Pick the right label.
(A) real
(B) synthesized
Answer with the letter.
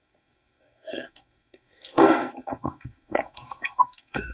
B